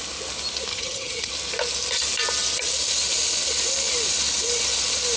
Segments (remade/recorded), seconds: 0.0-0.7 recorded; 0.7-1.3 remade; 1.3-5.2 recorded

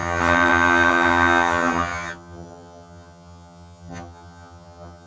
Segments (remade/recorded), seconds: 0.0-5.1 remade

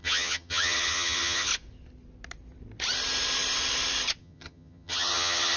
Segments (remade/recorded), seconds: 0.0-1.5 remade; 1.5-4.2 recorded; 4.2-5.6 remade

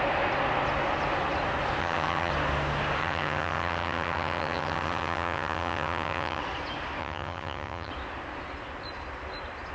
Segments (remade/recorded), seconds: 0.0-1.8 recorded; 1.8-2.3 remade; 2.3-3.0 recorded; 3.0-6.4 remade; 6.4-7.0 recorded; 7.0-7.9 remade; 7.9-9.7 recorded